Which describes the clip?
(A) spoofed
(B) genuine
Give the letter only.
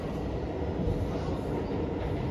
B